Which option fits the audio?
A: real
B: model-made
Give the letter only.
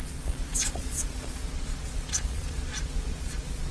B